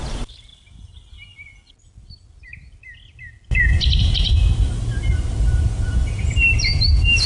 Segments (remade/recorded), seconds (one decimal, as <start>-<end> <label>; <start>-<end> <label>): 0.0-0.5 remade; 0.5-4.0 recorded; 4.0-4.5 remade; 4.5-5.4 recorded; 5.4-7.3 remade